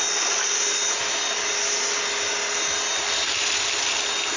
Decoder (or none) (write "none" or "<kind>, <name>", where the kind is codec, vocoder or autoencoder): none